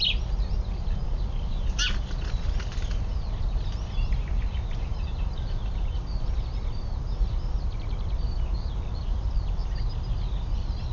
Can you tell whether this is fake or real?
real